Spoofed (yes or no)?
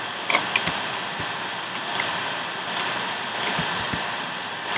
no